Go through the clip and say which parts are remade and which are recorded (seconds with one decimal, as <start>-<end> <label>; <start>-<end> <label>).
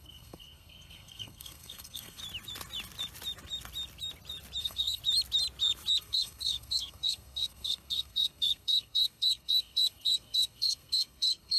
0.0-2.2 remade; 2.2-4.6 recorded; 4.6-5.0 remade; 5.0-6.0 recorded; 6.0-11.6 remade